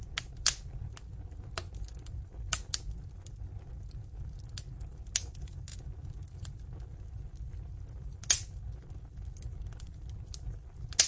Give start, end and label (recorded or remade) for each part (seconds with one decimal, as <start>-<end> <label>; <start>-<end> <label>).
0.0-11.1 recorded